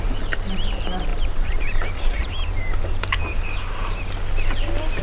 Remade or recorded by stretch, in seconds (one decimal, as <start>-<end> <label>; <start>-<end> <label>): 0.0-1.1 recorded; 1.1-4.1 remade; 4.1-5.0 recorded